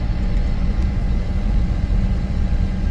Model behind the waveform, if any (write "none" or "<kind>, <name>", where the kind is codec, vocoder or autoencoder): vocoder, Vocos